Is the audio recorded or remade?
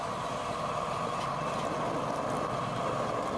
recorded